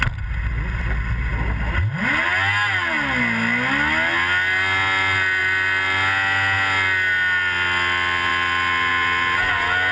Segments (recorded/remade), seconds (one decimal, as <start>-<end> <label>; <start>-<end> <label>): 0.0-9.9 recorded